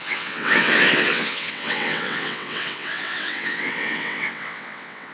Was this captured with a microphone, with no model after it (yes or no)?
no